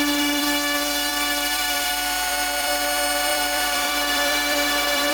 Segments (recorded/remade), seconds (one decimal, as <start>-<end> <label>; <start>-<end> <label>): 0.0-5.1 remade